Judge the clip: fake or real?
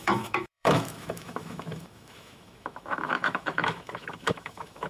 fake